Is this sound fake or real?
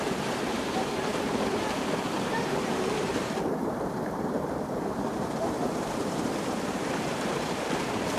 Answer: fake